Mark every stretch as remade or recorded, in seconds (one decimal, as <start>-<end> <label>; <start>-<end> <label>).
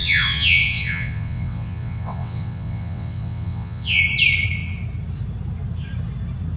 0.0-4.0 remade; 4.0-6.6 recorded